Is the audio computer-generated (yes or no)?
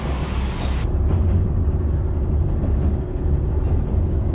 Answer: no